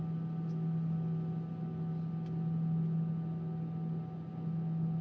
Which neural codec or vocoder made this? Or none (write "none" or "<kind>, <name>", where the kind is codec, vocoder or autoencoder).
none